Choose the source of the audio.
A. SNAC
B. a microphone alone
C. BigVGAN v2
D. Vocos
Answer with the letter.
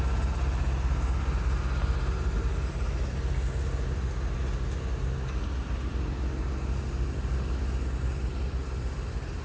B